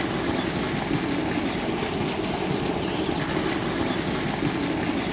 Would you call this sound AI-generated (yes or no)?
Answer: no